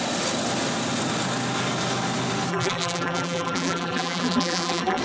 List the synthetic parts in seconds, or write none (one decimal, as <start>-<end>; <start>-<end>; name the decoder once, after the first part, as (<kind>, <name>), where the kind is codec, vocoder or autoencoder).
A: 2.5-5.0 (vocoder, BigVGAN v2)